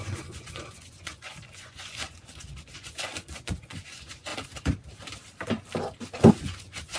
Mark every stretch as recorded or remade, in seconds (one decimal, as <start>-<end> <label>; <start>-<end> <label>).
0.0-4.3 remade; 4.3-6.3 recorded; 6.3-7.0 remade